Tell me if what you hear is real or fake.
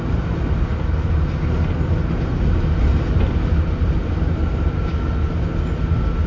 real